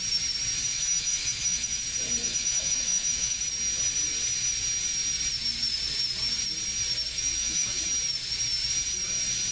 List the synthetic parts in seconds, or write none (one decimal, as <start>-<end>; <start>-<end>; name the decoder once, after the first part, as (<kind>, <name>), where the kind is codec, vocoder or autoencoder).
0.7-1.8 (autoencoder, DAC-VAE); 2.2-3.4; 7.1-7.8